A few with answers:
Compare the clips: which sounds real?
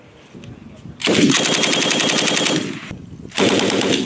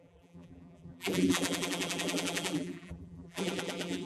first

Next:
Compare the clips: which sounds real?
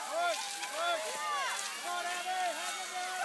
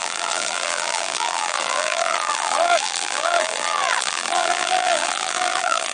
first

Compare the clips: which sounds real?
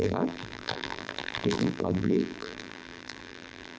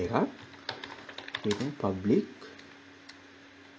second